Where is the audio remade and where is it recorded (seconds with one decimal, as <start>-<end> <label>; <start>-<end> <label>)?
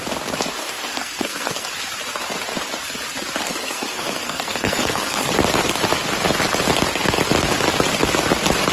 0.0-0.6 recorded; 0.6-1.7 remade; 1.7-3.5 recorded; 3.5-5.3 remade; 5.3-8.7 recorded